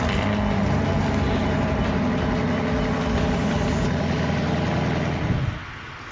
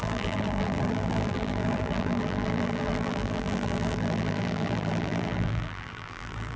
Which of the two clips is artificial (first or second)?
second